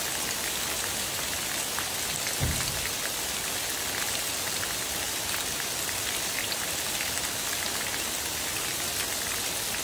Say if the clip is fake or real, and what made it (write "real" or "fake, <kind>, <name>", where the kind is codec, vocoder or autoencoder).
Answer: real